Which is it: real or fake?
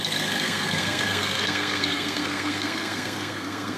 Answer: fake